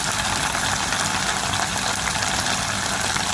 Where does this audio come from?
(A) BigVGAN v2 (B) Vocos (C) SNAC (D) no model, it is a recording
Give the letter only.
D